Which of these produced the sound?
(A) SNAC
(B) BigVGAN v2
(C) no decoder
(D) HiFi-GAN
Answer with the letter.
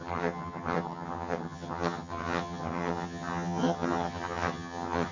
D